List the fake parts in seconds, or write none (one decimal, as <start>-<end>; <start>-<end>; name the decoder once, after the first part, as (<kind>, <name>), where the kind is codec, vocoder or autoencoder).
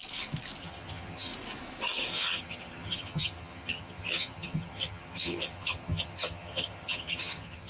0.6-1.3 (vocoder, HiFi-GAN); 2.1-7.7